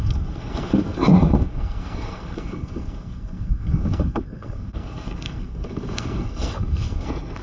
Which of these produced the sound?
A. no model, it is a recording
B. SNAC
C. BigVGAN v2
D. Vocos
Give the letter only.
B